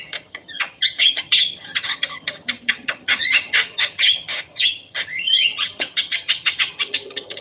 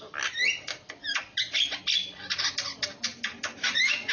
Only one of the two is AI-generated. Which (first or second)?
first